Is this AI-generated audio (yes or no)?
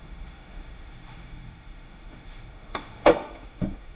yes